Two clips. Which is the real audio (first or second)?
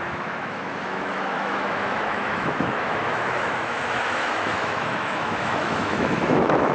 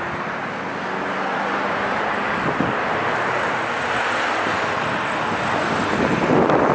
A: second